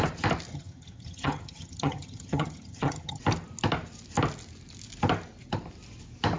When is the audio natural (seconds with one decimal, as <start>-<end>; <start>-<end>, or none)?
0.0-0.5; 3.2-6.4